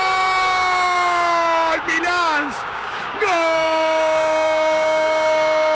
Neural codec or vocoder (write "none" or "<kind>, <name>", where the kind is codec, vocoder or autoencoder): codec, DAC